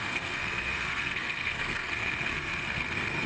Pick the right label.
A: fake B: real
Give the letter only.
A